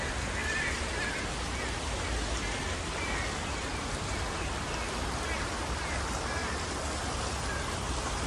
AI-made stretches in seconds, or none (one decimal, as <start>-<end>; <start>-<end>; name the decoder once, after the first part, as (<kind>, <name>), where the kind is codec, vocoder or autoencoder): none